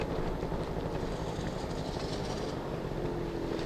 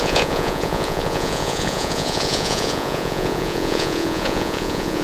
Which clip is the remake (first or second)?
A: second